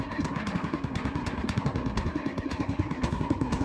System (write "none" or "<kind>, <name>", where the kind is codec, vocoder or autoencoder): codec, SNAC